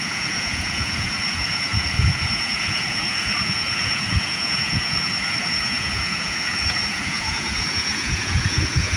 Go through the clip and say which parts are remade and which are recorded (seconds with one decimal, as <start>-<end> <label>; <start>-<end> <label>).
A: 0.0-9.0 remade